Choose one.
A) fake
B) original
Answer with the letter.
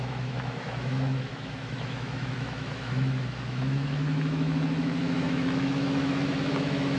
A